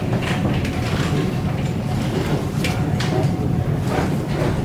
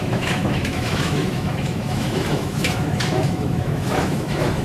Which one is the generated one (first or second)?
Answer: second